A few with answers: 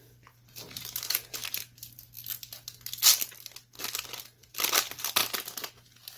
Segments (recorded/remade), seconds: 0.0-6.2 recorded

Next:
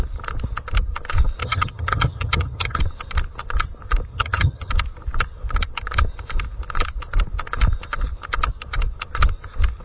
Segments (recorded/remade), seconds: 0.0-1.4 recorded; 1.4-2.8 remade; 2.8-4.1 recorded; 4.1-4.7 remade; 4.7-9.8 recorded

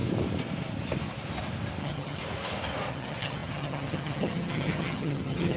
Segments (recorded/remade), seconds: 0.0-1.8 recorded; 1.8-2.2 remade; 2.2-2.9 recorded; 2.9-5.6 remade

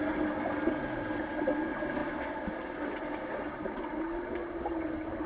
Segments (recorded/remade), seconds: 0.0-5.3 recorded